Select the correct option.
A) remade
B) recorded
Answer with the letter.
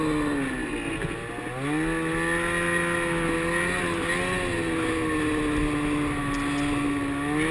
B